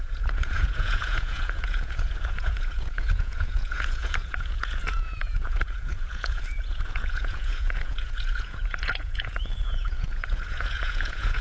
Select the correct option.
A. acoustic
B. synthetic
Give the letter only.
B